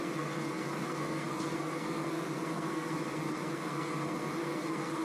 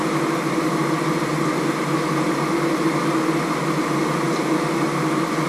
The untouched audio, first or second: second